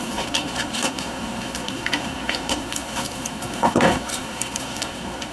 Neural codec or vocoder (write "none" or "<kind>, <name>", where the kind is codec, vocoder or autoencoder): codec, SNAC